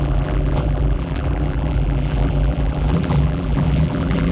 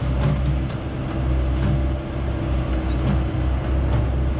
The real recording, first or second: second